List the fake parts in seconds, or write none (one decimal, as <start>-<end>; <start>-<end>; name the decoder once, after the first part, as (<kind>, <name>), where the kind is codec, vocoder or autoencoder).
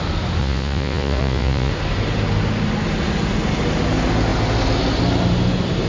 0.4-1.7 (vocoder, Vocos)